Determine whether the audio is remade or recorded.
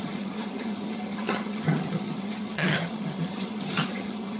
remade